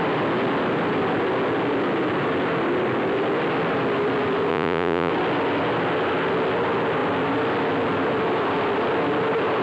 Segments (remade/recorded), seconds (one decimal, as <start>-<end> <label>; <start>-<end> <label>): 0.0-4.5 recorded; 4.5-5.1 remade; 5.1-9.6 recorded